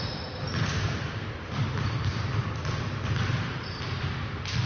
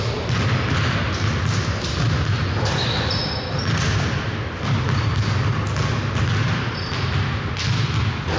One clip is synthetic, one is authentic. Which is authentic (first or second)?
second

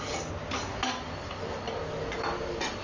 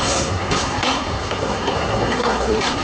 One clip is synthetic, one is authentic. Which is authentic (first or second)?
first